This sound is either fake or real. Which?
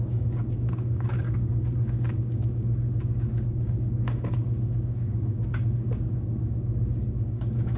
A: fake